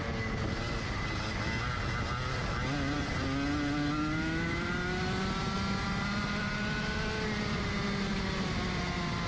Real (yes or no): yes